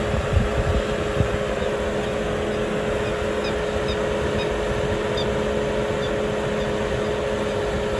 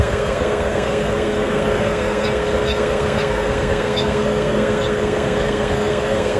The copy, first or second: second